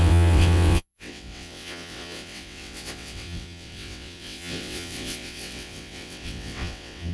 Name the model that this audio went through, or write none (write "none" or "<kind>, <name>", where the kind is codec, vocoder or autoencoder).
vocoder, WaveNeXt